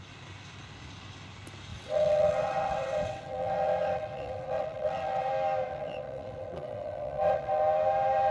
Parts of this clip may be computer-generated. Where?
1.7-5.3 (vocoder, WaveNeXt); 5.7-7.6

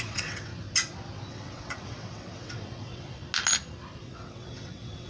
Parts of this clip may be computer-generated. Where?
0.0-0.5 (vocoder, WaveNeXt); 1.3-3.2; 4.0-5.1

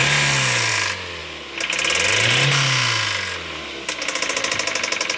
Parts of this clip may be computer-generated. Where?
none

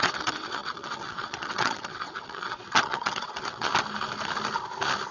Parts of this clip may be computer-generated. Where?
0.0-3.7 (vocoder, WaveNeXt)

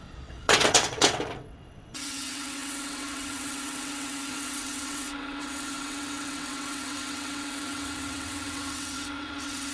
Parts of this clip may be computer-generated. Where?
0.0-9.7 (vocoder, WaveNeXt)